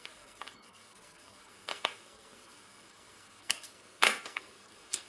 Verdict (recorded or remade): remade